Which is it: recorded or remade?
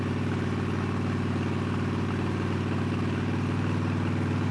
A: recorded